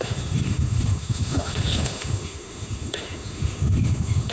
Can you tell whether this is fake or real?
fake